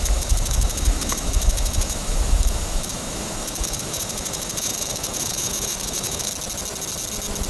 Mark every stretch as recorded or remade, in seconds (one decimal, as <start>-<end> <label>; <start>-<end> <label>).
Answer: 0.0-6.3 remade; 6.3-7.5 recorded

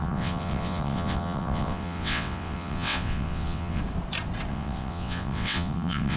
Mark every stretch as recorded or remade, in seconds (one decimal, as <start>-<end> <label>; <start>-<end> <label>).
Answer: 0.0-3.8 remade; 3.8-4.5 recorded; 4.5-6.2 remade

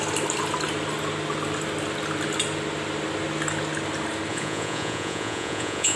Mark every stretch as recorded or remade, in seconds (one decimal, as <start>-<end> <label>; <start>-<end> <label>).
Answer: 0.0-4.3 recorded; 4.3-6.0 remade

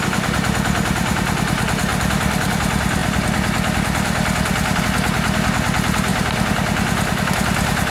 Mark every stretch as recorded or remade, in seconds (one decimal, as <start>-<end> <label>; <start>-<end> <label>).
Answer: 0.0-1.9 recorded; 1.9-2.5 remade; 2.5-3.0 recorded; 3.0-4.8 remade; 4.8-6.1 recorded; 6.1-7.3 remade; 7.3-7.9 recorded

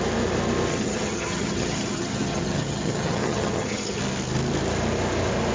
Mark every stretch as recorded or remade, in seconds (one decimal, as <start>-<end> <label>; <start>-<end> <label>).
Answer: 0.0-0.7 recorded; 0.7-4.0 remade; 4.0-5.5 recorded

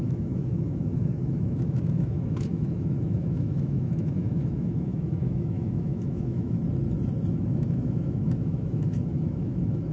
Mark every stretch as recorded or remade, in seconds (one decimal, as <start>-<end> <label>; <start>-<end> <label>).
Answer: 0.0-6.6 remade; 6.6-7.3 recorded; 7.3-9.9 remade

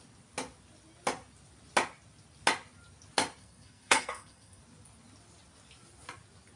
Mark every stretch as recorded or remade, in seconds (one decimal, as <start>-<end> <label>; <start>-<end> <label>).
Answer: 0.0-3.4 recorded; 3.4-4.6 remade; 4.6-6.6 recorded

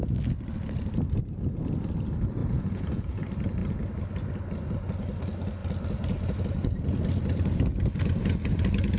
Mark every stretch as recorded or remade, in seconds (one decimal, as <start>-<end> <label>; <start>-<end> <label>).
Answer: 0.0-2.4 recorded; 2.4-3.2 remade; 3.2-9.0 recorded